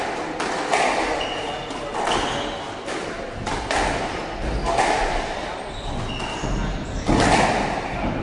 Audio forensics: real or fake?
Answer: real